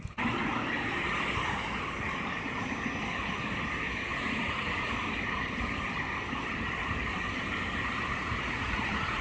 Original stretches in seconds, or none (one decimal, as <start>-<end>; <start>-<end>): 0.0-4.1; 4.9-8.1